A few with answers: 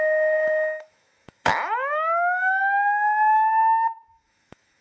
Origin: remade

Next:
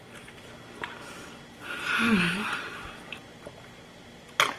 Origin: recorded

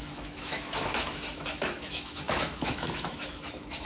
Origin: remade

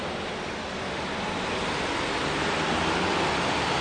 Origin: recorded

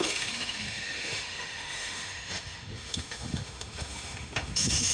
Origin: remade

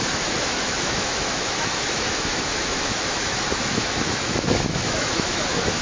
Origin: remade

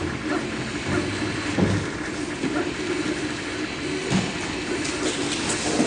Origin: recorded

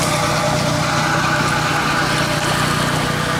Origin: recorded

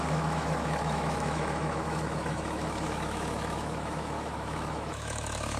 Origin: remade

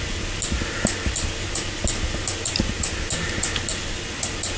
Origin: recorded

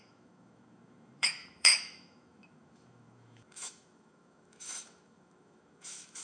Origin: remade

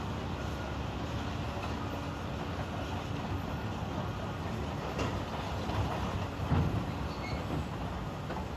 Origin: recorded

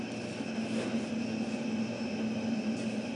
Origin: recorded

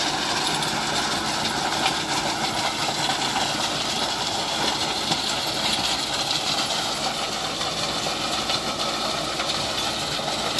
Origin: recorded